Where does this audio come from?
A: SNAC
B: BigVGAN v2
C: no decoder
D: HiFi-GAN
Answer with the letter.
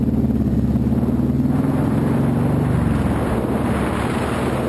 C